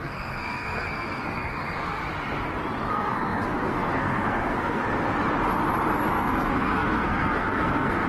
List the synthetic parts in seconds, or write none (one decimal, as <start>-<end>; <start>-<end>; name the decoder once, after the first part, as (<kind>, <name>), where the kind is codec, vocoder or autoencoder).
0.0-2.0 (codec, SNAC); 2.9-4.8; 6.1-8.1